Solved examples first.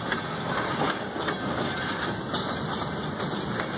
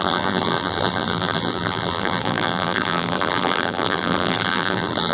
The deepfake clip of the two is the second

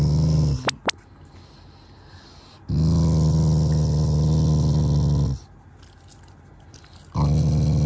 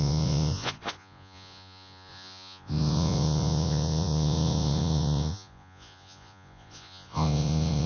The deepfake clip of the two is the second